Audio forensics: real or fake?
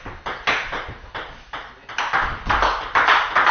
real